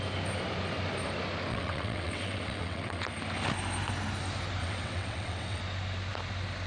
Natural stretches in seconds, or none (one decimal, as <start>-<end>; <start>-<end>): 0.0-1.5; 3.0-4.6; 5.6-6.7